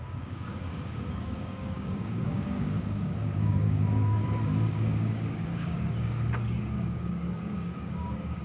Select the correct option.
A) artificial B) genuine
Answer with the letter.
A